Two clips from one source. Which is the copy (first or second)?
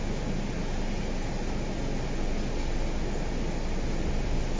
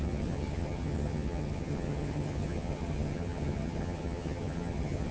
second